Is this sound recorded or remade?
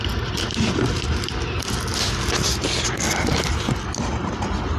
recorded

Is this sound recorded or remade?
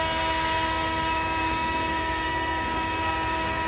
remade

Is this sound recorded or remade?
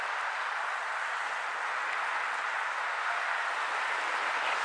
recorded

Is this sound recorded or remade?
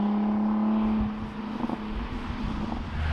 recorded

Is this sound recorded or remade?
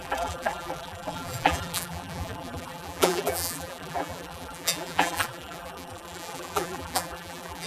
remade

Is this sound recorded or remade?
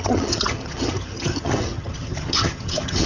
remade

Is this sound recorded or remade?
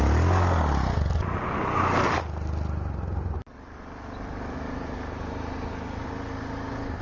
recorded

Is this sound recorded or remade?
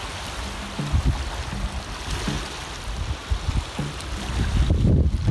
recorded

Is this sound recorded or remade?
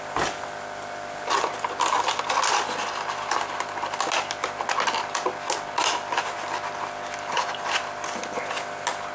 recorded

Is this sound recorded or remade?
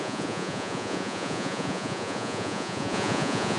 remade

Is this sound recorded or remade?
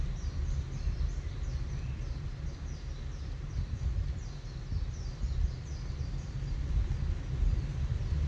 recorded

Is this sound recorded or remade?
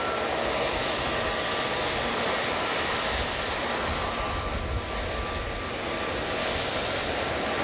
recorded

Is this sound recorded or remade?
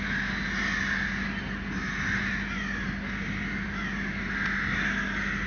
recorded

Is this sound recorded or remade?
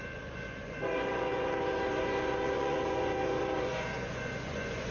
remade